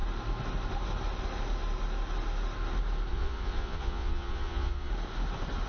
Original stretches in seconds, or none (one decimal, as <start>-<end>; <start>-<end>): 0.0-3.1; 4.9-5.7